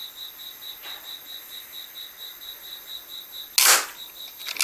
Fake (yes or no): no